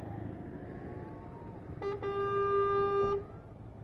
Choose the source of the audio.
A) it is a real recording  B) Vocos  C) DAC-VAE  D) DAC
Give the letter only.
A